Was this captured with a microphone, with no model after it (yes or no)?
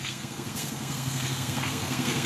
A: no